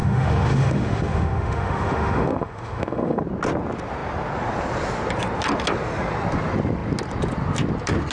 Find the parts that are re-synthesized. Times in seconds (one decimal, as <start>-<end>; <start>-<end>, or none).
0.0-3.2